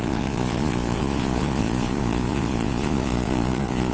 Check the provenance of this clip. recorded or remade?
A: remade